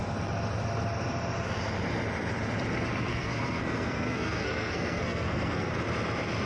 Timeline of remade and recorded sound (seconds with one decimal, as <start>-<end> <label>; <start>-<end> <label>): 0.0-3.1 recorded; 3.1-5.7 remade; 5.7-6.5 recorded